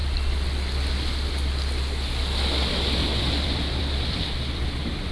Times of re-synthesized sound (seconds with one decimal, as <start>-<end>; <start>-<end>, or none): 3.0-4.3

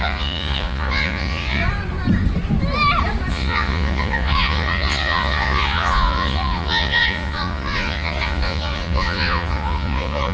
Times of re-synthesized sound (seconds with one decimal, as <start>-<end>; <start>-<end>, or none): 0.0-1.6; 3.3-10.3